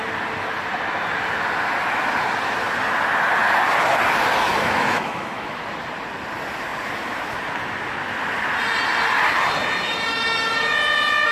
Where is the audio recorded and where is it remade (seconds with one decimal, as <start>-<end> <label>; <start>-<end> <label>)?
0.0-4.5 recorded; 4.5-5.6 remade; 5.6-11.3 recorded